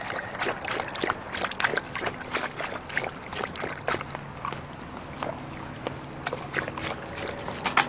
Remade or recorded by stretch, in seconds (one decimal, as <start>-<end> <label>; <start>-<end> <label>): 0.0-7.9 recorded